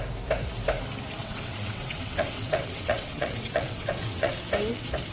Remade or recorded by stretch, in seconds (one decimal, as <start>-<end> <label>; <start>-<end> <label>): 0.0-1.2 recorded; 1.2-4.3 remade; 4.3-5.1 recorded